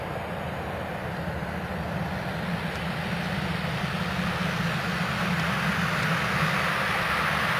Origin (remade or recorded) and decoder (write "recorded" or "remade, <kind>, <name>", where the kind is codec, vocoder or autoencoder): recorded